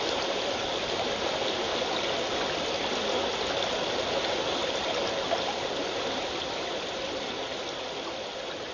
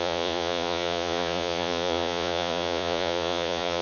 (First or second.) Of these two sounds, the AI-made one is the second